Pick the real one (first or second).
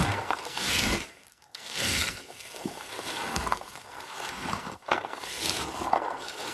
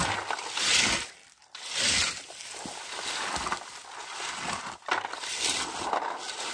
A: second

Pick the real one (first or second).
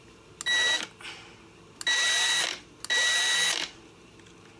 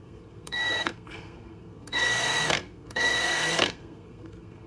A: first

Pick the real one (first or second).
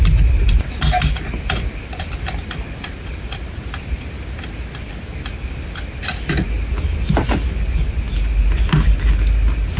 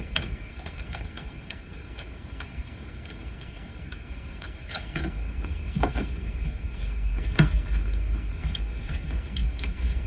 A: first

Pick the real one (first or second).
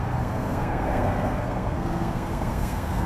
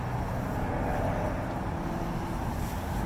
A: second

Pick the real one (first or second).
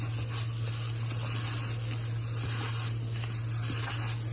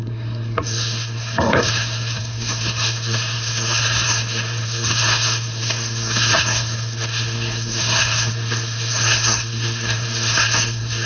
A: first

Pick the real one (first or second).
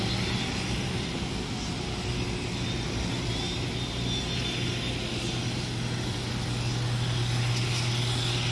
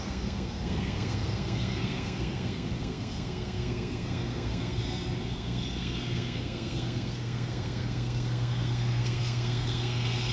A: first